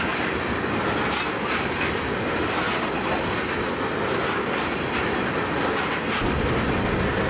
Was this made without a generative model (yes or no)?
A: yes